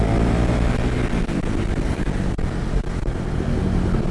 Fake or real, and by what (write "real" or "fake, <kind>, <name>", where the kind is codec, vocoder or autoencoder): real